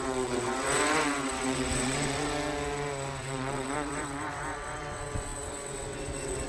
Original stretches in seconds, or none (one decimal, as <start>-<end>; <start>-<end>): 2.3-3.2